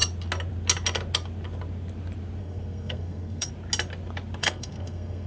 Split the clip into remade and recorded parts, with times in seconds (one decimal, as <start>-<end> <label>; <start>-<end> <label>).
0.0-2.4 recorded; 2.4-3.5 remade; 3.5-4.4 recorded; 4.4-5.3 remade